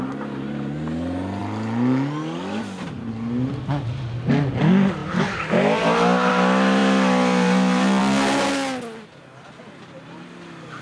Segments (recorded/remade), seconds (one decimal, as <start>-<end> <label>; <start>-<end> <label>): 0.0-10.8 recorded